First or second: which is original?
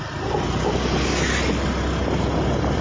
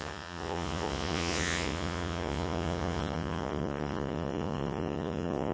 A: first